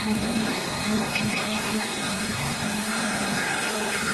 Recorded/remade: remade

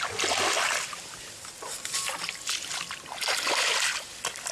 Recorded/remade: recorded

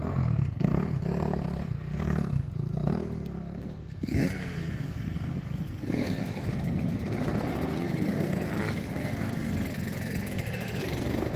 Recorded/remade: remade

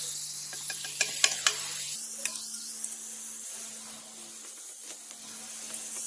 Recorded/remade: recorded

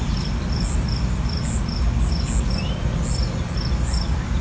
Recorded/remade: recorded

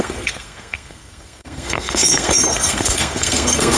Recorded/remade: remade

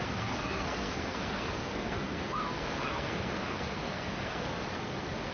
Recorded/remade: remade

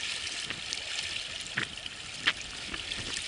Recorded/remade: recorded